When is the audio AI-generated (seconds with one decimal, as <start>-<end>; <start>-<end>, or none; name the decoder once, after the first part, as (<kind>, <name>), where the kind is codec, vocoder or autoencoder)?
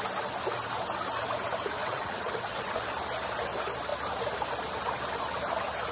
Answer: 1.8-2.8 (vocoder, WaveNeXt)